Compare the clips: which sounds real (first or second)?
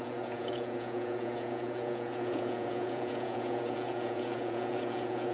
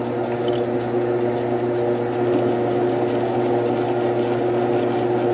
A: second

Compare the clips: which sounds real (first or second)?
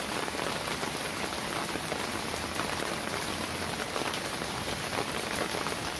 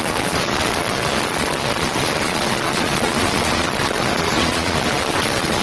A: first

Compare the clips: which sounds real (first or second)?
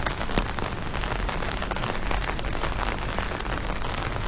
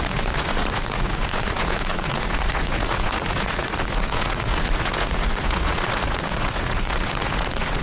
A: first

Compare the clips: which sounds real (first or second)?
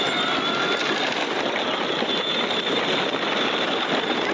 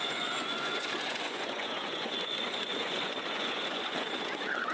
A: first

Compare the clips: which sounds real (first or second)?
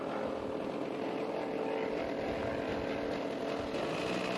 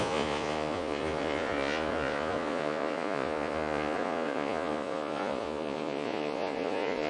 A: first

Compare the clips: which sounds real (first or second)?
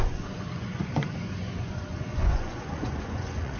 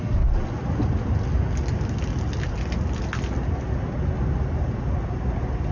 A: second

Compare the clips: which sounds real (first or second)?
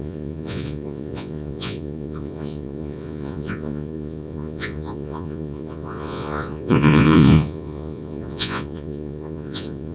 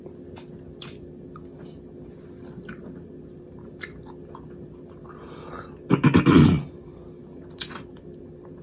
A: second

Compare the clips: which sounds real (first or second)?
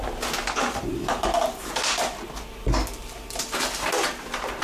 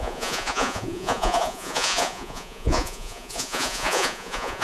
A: first